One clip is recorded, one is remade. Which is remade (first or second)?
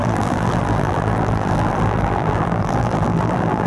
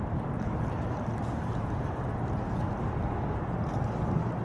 first